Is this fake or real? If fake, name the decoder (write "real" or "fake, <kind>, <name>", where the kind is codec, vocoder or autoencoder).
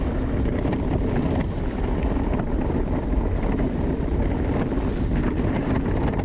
real